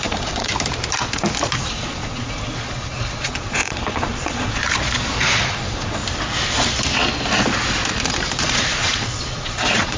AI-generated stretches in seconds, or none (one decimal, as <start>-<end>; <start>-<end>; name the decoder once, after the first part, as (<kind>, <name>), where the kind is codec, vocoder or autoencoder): 0.0-0.5 (vocoder, Vocos); 1.7-4.6; 5.2-6.0; 8.4-10.0